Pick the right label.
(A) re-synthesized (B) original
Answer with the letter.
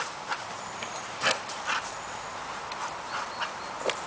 A